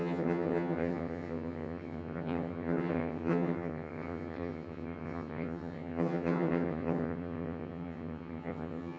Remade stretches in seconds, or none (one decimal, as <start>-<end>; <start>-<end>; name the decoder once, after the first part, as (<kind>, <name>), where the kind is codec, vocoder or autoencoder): 0.0-9.0 (vocoder, HiFi-GAN)